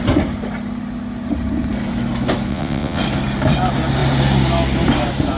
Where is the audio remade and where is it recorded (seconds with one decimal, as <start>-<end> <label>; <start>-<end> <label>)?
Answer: 0.0-2.5 recorded; 2.5-3.0 remade; 3.0-5.4 recorded